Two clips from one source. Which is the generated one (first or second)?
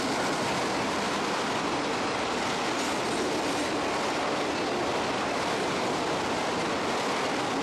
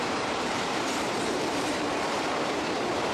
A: second